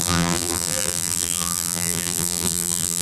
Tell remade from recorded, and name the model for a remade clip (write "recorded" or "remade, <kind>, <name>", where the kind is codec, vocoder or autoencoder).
remade, vocoder, BigVGAN v2